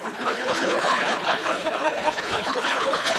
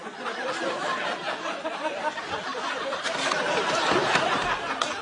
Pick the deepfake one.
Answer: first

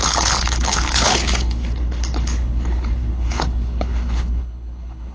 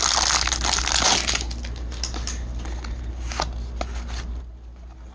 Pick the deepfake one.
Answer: first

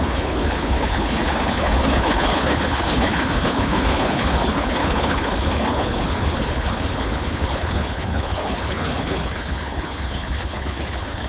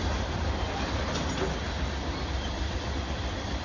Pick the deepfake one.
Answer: first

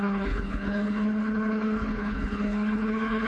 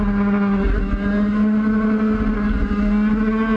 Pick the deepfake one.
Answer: first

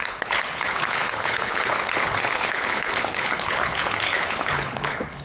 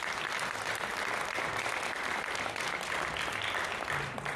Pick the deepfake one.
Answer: first